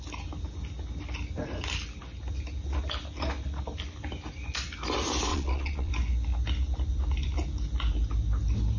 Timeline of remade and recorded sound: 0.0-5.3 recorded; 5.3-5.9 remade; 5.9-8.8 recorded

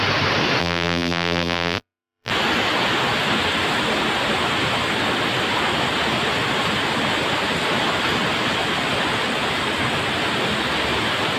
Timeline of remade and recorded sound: 0.0-0.6 recorded; 0.6-2.3 remade; 2.3-11.4 recorded

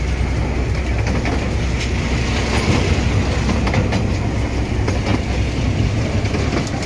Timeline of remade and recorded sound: 0.0-6.9 recorded